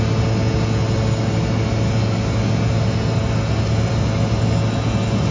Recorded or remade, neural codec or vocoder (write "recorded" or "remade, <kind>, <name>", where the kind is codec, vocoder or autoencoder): recorded